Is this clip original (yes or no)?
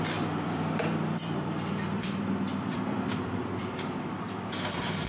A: no